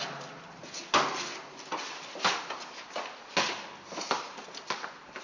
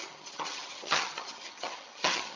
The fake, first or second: second